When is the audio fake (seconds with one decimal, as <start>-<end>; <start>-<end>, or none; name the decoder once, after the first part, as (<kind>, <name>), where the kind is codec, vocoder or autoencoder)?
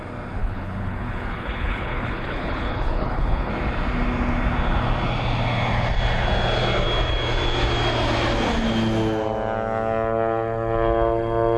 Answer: 0.4-3.5 (codec, HILCodec)